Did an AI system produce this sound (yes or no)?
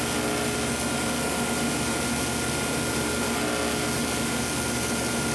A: no